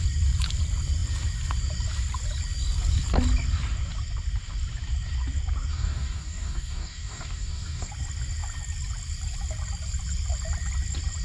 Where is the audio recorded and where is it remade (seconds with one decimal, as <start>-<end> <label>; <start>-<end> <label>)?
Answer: 0.0-5.7 recorded; 5.7-7.9 remade; 7.9-11.2 recorded